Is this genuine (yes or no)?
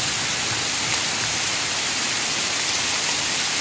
yes